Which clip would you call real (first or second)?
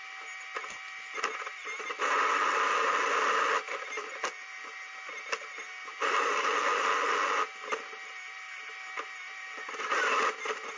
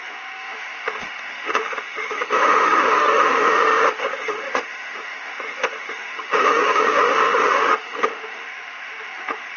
first